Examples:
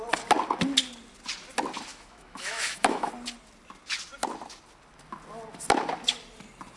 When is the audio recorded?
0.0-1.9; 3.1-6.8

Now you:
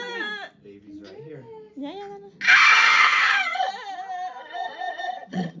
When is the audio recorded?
0.0-2.7; 3.7-4.4

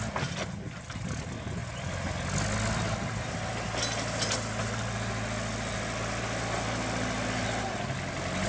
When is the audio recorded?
0.0-8.5

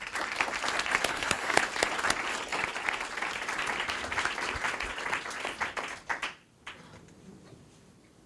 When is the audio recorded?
0.0-1.1; 1.6-8.3